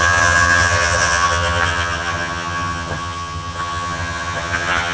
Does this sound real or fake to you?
fake